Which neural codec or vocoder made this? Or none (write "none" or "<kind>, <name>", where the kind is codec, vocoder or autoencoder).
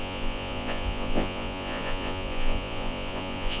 vocoder, Vocos